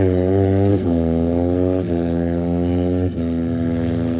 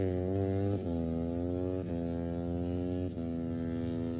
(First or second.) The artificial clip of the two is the first